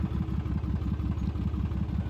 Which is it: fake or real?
real